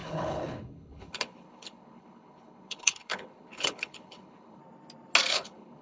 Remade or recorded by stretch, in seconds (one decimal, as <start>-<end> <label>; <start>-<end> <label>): 0.0-4.6 remade; 4.6-5.3 recorded; 5.3-5.8 remade